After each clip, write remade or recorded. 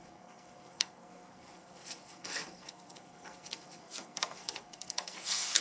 remade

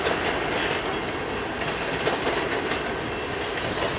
recorded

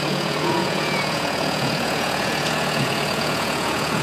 remade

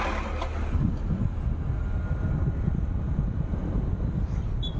recorded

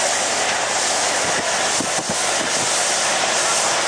recorded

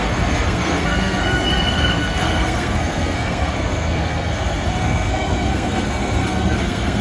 remade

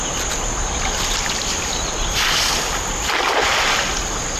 recorded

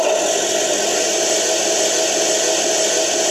recorded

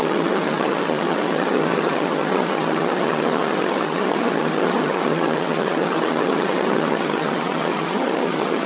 remade